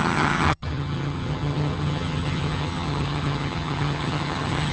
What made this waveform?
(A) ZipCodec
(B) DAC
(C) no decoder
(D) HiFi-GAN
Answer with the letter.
D